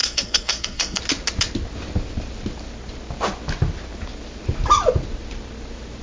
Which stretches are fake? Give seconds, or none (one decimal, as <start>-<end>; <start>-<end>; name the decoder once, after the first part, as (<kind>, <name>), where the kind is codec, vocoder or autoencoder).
0.0-1.0 (codec, SNAC)